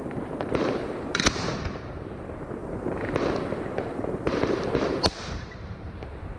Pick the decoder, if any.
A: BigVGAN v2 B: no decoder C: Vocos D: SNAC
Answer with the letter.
A